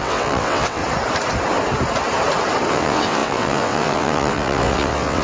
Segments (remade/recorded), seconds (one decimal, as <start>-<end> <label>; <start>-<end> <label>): 0.0-0.8 remade; 0.8-2.7 recorded; 2.7-5.2 remade